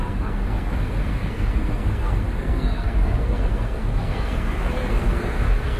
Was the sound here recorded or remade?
remade